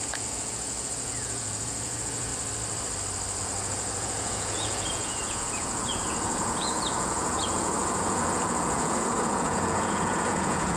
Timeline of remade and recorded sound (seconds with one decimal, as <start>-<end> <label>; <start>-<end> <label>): 0.0-2.3 remade; 2.3-3.4 recorded; 3.4-10.8 remade